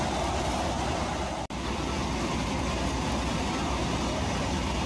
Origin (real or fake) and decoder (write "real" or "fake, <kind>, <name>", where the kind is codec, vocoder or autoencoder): real